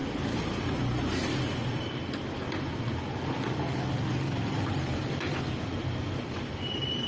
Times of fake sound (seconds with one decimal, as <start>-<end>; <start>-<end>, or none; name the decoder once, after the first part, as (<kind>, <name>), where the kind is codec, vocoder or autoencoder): 4.1-7.1 (vocoder, BigVGAN v2)